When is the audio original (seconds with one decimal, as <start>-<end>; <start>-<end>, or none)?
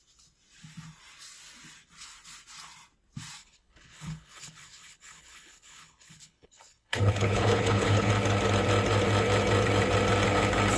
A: 0.0-3.4; 8.1-10.8